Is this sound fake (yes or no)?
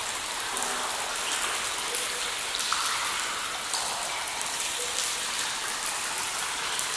no